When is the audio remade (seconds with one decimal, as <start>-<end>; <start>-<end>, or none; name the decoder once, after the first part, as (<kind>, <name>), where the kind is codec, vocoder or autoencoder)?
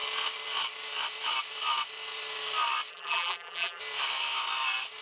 2.9-3.8 (vocoder, BigVGAN v2)